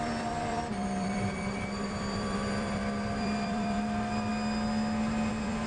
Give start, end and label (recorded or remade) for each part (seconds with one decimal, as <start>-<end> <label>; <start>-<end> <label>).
0.0-4.3 remade; 4.3-5.3 recorded; 5.3-5.7 remade